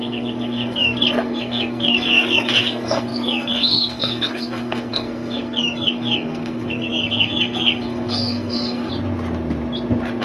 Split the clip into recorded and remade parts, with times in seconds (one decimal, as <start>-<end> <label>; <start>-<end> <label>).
0.0-8.9 remade; 8.9-10.2 recorded